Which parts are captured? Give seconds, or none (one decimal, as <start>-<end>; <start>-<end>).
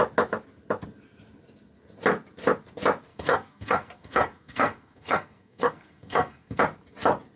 0.0-3.1; 6.6-7.4